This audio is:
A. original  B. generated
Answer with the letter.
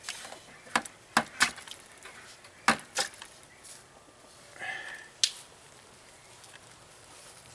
A